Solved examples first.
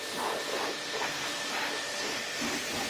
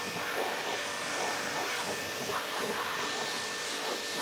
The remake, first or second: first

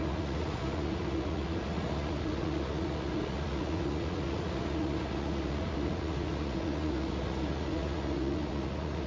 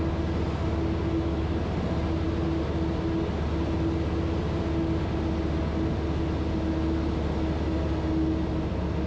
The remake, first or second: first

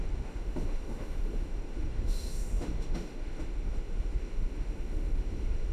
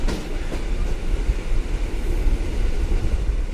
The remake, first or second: first